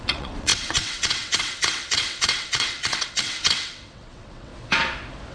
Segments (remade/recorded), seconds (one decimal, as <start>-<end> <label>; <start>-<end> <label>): 0.0-4.5 remade; 4.5-5.3 recorded